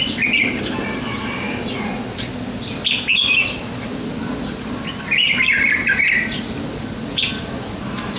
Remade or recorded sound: recorded